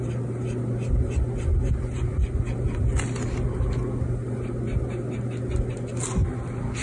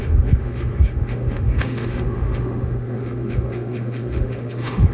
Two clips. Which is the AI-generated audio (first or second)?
second